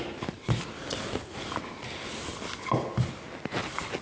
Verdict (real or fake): real